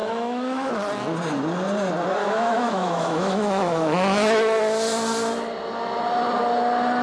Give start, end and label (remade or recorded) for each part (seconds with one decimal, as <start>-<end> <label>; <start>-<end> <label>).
0.0-0.7 remade; 0.7-2.2 recorded; 2.2-4.6 remade; 4.6-7.0 recorded